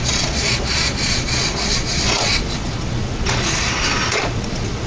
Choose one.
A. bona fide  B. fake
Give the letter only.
B